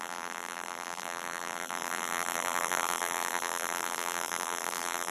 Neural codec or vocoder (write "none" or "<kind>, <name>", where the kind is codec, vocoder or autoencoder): vocoder, BigVGAN v2